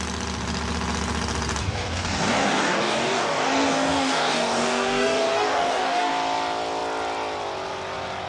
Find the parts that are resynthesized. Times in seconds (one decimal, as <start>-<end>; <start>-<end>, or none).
1.6-6.1